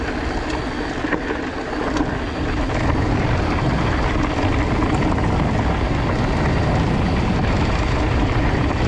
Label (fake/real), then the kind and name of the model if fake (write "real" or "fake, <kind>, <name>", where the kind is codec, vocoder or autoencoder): real